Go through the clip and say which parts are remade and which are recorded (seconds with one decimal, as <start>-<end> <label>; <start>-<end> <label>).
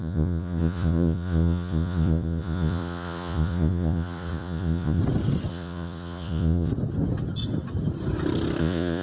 0.0-5.0 remade; 5.0-5.5 recorded; 5.5-6.7 remade; 6.7-8.6 recorded; 8.6-9.0 remade